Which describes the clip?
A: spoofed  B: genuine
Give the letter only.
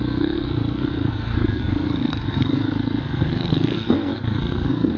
A